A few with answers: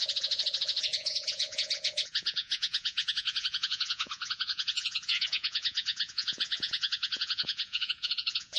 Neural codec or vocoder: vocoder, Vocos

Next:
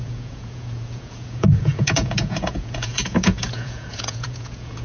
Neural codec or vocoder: vocoder, Vocos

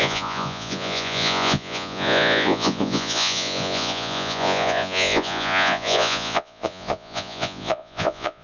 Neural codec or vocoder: vocoder, Vocos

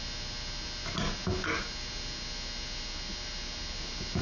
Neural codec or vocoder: none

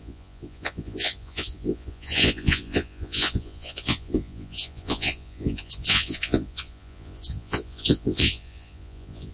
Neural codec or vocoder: vocoder, Vocos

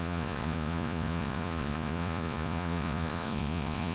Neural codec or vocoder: vocoder, Vocos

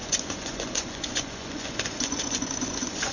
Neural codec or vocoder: vocoder, Vocos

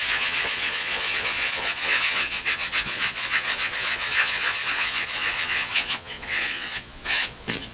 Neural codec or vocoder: vocoder, Vocos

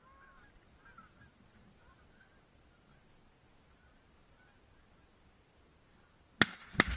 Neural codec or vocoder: none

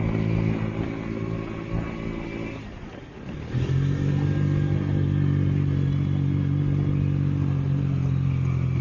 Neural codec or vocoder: none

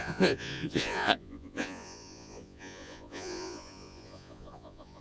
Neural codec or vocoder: vocoder, Vocos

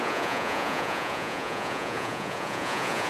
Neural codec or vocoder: vocoder, Vocos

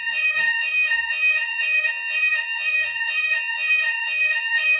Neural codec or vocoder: vocoder, Vocos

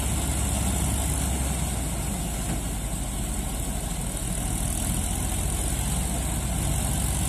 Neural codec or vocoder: none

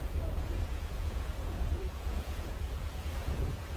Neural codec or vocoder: vocoder, Vocos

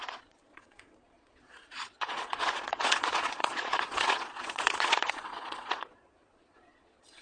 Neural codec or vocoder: vocoder, Vocos